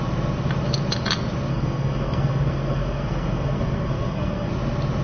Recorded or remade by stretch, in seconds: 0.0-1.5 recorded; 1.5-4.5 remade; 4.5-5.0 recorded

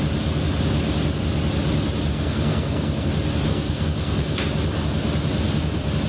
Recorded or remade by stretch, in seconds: 0.0-2.1 recorded; 2.1-3.1 remade; 3.1-3.5 recorded; 3.5-4.4 remade; 4.4-6.1 recorded

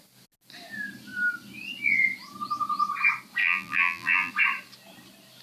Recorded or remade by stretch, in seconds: 0.0-3.4 recorded; 3.4-4.3 remade; 4.3-5.4 recorded

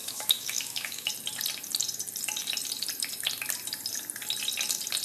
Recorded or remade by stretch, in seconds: 0.0-1.1 remade; 1.1-5.0 recorded